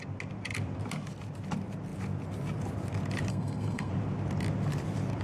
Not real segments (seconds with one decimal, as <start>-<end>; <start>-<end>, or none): 3.3-3.9